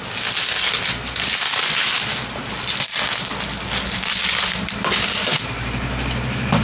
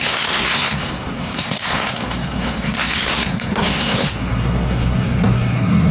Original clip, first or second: first